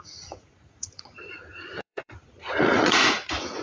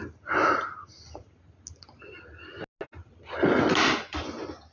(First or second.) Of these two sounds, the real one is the second